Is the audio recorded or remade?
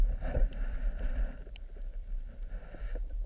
remade